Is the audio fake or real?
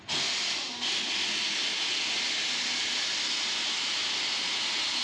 real